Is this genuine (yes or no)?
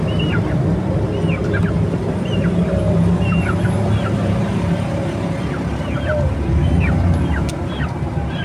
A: yes